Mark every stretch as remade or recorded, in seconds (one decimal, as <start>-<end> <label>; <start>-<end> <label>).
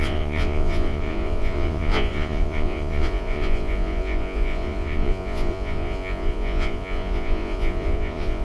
0.0-8.4 remade